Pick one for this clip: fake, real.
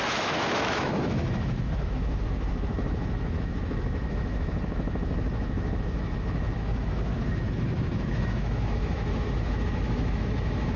fake